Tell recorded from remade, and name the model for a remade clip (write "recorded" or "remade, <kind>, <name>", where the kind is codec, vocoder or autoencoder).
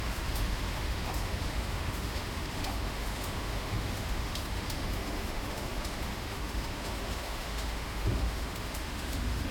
remade, autoencoder, DAC-VAE